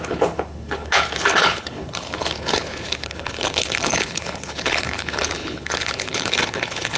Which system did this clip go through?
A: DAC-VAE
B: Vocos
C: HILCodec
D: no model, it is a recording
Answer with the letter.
C